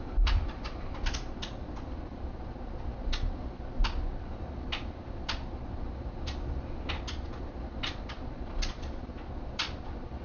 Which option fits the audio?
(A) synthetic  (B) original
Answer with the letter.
B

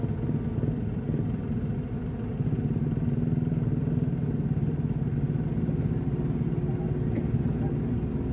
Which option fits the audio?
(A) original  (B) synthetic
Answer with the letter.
A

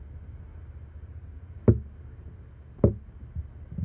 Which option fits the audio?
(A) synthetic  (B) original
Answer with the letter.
B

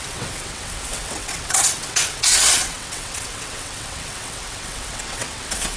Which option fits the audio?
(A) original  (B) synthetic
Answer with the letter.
B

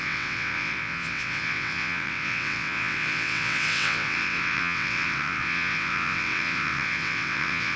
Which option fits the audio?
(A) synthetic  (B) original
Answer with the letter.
A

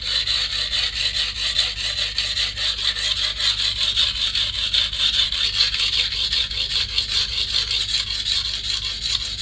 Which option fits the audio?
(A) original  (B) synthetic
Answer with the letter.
A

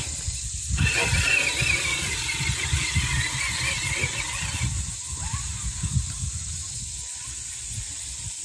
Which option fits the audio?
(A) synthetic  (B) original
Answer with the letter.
B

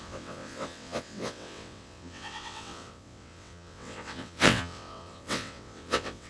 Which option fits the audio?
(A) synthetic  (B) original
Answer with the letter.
A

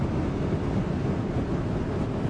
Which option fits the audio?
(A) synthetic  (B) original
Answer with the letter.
B